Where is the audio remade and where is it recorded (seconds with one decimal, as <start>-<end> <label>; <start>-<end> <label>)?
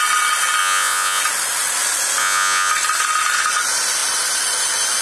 0.0-0.6 recorded; 0.6-1.2 remade; 1.2-2.2 recorded; 2.2-2.7 remade; 2.7-5.0 recorded